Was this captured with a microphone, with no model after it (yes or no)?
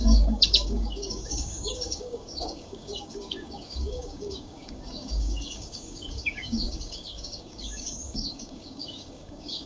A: no